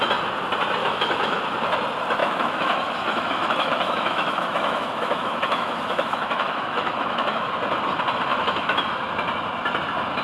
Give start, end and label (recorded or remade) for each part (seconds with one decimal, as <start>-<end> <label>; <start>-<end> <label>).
0.0-0.8 recorded; 0.8-1.4 remade; 1.4-2.2 recorded; 2.2-7.5 remade; 7.5-8.3 recorded; 8.3-8.8 remade; 8.8-10.2 recorded